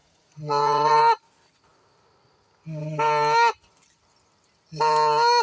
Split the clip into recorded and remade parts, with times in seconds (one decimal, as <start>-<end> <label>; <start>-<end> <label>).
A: 0.0-1.0 remade; 1.0-5.4 recorded